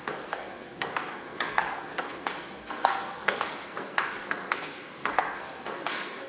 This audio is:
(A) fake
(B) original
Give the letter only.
A